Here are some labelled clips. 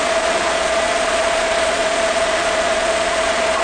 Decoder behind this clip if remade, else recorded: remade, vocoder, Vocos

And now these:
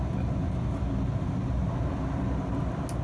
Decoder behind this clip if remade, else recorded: recorded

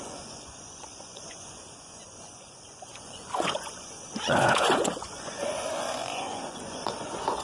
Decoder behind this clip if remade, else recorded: remade, vocoder, Vocos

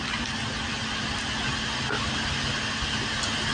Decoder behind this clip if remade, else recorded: recorded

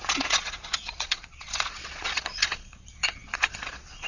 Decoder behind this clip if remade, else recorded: remade, vocoder, Vocos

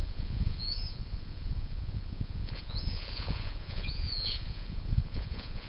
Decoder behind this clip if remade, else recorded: remade, vocoder, Vocos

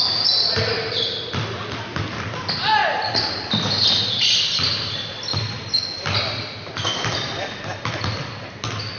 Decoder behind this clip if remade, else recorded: recorded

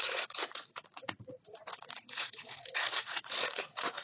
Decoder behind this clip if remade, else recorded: remade, vocoder, Vocos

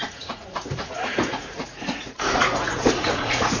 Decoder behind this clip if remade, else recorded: remade, vocoder, Vocos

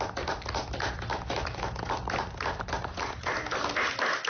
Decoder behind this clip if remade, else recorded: recorded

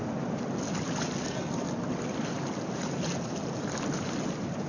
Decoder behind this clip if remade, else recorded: recorded